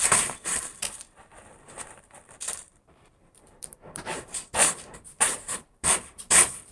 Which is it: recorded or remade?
remade